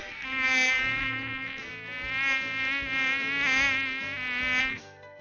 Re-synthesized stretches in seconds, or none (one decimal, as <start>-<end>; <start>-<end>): 0.0-1.7; 4.6-5.2